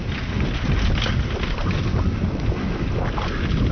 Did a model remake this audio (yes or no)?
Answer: no